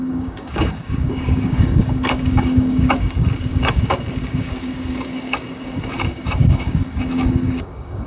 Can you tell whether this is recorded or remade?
remade